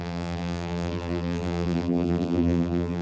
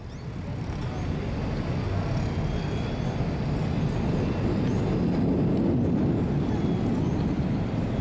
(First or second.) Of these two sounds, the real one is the second